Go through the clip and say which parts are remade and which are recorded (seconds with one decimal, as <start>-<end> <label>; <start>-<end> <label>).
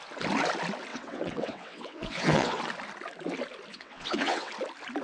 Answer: 0.0-0.9 recorded; 0.9-2.6 remade; 2.6-3.7 recorded; 3.7-4.5 remade; 4.5-5.0 recorded